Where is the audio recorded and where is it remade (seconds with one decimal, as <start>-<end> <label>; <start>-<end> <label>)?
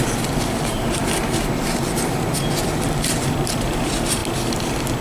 0.0-4.2 remade; 4.2-5.0 recorded